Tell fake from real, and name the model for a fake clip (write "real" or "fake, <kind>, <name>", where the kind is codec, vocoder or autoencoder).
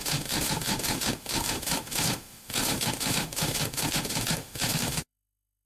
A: fake, autoencoder, DAC-VAE